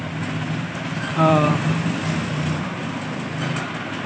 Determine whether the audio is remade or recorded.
recorded